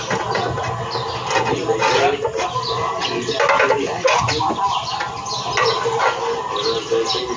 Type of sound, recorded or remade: recorded